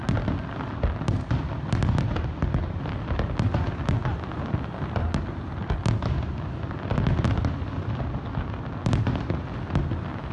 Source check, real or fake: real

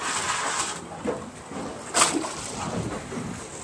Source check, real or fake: real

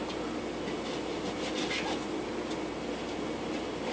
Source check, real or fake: real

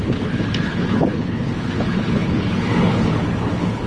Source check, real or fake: fake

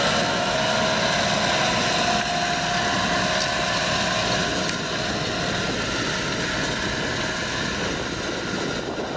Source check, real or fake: real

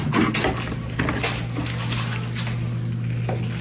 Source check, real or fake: real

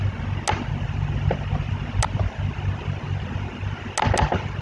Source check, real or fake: real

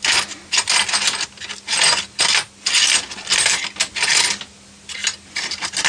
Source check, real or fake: real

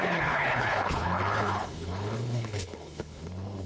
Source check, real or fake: fake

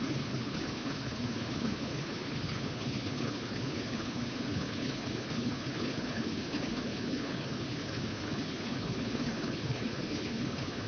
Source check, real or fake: fake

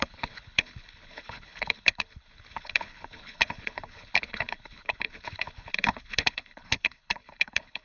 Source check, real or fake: fake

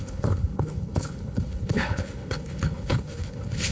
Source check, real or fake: fake